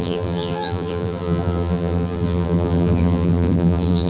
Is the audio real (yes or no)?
no